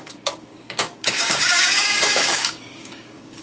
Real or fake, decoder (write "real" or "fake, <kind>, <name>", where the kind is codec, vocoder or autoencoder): fake, codec, DAC